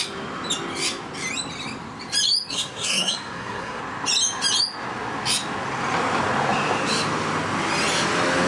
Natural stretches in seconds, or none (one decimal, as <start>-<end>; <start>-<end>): 0.0-2.5; 3.8-8.5